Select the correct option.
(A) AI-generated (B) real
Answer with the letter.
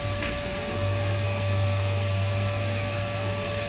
A